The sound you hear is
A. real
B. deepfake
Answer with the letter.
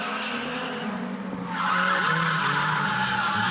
A